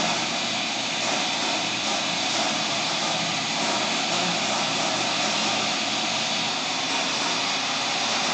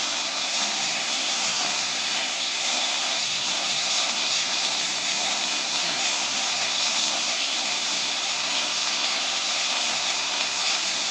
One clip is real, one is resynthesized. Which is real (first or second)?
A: first